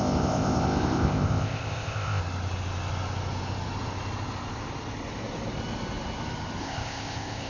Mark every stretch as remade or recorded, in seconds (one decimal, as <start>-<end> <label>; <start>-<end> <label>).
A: 0.0-2.2 remade; 2.2-6.6 recorded; 6.6-7.5 remade